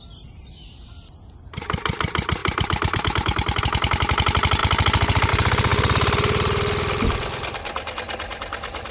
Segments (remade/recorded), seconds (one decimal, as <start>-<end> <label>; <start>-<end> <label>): 0.0-2.4 recorded; 2.4-3.6 remade; 3.6-8.9 recorded